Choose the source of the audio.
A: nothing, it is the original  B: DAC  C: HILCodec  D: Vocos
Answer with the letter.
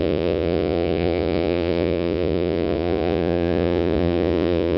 D